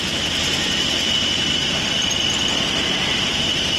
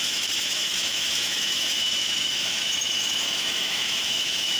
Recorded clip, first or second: first